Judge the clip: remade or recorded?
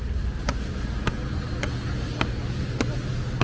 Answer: recorded